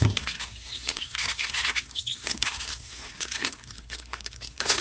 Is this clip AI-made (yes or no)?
yes